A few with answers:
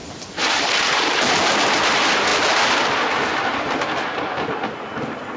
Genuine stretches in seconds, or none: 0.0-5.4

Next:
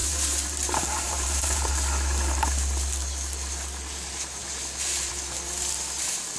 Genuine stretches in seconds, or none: 1.7-6.4